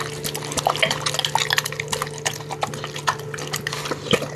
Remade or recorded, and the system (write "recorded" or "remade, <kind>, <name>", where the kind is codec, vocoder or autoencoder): recorded